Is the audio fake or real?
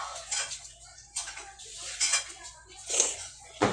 fake